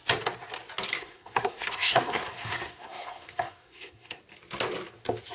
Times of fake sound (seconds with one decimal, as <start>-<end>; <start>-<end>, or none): 1.0-4.2